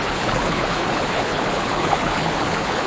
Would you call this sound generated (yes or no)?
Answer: yes